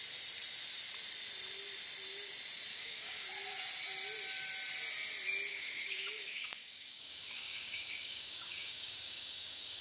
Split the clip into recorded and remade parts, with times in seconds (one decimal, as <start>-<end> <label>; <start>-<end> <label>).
0.0-2.7 recorded; 2.7-3.3 remade; 3.3-5.5 recorded; 5.5-9.8 remade